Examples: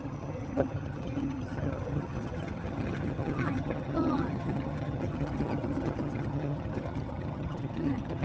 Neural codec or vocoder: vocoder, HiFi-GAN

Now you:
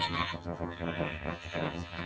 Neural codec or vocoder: vocoder, HiFi-GAN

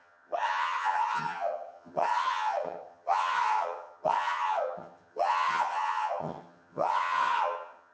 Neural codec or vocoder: vocoder, HiFi-GAN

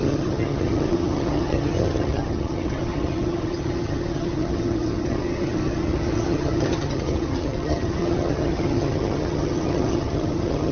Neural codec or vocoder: vocoder, HiFi-GAN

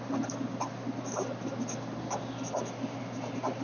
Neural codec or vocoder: none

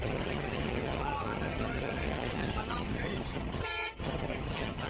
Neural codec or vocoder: vocoder, HiFi-GAN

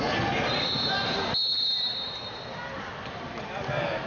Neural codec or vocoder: none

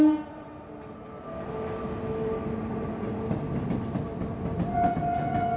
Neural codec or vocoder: none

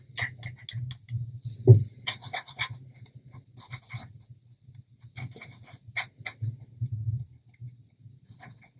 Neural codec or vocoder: none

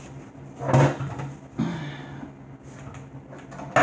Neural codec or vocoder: none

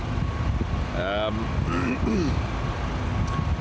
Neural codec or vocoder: none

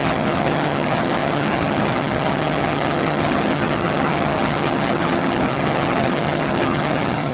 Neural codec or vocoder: vocoder, HiFi-GAN